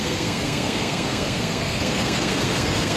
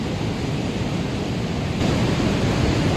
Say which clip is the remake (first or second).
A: first